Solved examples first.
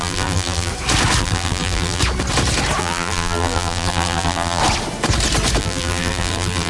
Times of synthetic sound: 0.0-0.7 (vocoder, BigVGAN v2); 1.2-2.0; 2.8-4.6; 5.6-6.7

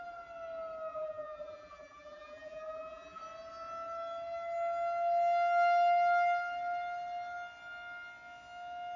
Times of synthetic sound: 0.9-3.2 (vocoder, BigVGAN v2)

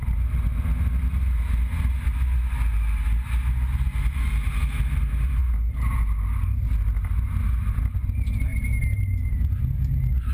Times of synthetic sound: none